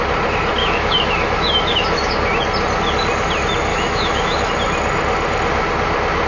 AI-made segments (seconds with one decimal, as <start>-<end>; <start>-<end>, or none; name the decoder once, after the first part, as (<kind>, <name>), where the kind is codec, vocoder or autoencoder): 0.6-2.1 (autoencoder, DAC-VAE); 3.7-4.5